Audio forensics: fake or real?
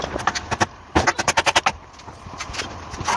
real